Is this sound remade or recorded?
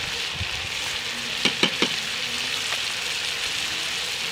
recorded